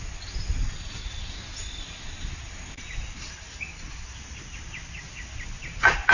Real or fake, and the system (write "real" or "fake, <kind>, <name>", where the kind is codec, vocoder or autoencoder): real